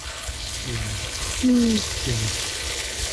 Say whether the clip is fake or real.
fake